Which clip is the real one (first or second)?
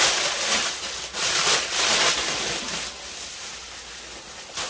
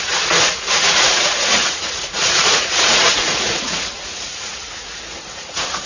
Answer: first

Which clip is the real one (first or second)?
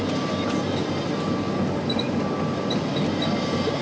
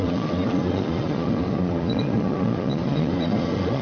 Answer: first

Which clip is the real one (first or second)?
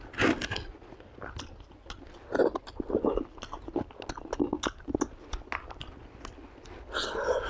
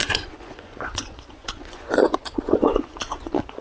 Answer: first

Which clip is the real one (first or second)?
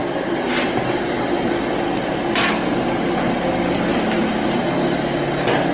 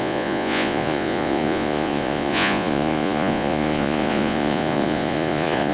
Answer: first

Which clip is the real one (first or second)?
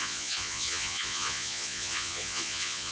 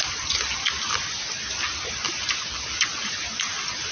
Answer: second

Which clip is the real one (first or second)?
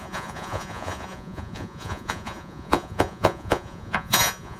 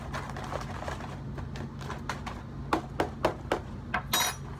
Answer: second